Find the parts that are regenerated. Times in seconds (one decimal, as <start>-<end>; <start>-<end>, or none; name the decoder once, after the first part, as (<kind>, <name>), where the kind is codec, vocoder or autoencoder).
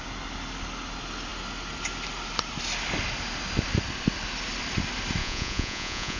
5.2-6.2 (vocoder, Vocos)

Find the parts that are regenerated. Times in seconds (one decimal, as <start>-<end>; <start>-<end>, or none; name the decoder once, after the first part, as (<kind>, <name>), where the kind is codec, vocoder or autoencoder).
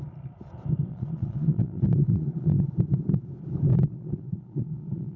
0.9-2.7 (vocoder, Vocos); 3.7-5.2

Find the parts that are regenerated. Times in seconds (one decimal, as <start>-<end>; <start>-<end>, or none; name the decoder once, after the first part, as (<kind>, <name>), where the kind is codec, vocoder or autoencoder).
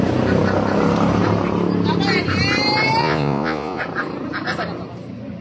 3.0-3.8 (vocoder, Vocos)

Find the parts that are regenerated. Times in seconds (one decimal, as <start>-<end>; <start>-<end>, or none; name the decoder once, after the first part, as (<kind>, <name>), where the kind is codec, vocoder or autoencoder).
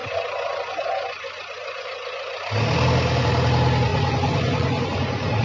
3.9-5.4 (vocoder, Vocos)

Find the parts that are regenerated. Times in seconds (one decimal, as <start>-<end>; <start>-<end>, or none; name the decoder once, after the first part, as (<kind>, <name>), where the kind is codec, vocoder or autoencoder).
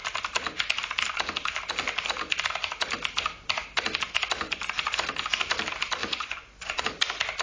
6.0-6.8 (vocoder, Vocos)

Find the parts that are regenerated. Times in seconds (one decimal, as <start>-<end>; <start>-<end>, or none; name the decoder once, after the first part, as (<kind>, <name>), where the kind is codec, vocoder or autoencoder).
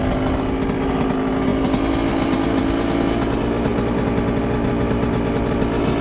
none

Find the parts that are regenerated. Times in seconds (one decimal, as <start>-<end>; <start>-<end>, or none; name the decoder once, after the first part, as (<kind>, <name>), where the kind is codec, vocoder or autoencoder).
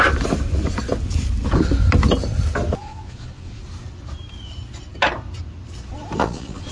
2.8-3.6 (vocoder, Vocos); 6.2-6.7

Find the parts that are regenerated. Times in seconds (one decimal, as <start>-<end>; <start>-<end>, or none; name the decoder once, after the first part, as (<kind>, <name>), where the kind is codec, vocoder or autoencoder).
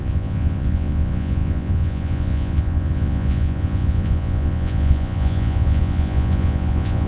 0.0-7.1 (vocoder, Vocos)